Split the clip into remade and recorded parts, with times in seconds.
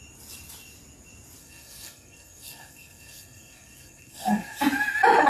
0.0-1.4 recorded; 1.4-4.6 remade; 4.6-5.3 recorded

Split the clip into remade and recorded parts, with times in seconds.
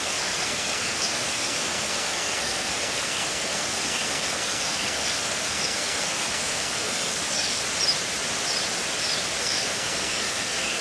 0.0-7.6 remade; 7.6-9.4 recorded; 9.4-10.8 remade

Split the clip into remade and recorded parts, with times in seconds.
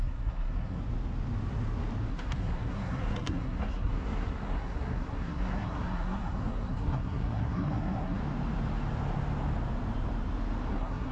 0.0-0.8 remade; 0.8-2.1 recorded; 2.1-8.2 remade; 8.2-10.7 recorded; 10.7-11.1 remade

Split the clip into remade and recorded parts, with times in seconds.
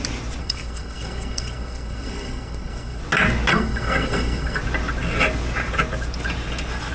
0.0-0.4 recorded; 0.4-3.0 remade; 3.0-3.5 recorded; 3.5-4.6 remade; 4.6-6.9 recorded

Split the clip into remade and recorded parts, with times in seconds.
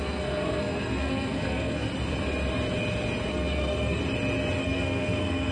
0.0-1.9 remade; 1.9-3.3 recorded; 3.3-4.0 remade; 4.0-4.6 recorded; 4.6-5.5 remade